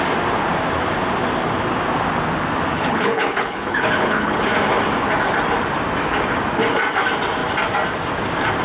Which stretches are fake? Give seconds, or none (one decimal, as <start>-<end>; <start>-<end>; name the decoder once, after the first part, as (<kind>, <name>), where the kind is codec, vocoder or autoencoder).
2.7-4.4 (codec, HILCodec)